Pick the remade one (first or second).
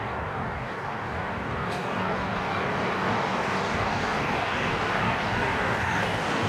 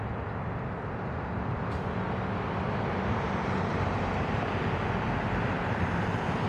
first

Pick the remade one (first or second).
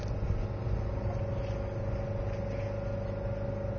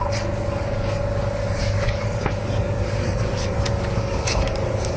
second